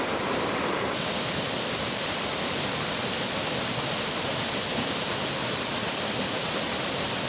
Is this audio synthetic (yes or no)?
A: yes